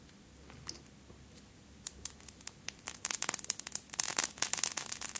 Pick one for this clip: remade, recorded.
recorded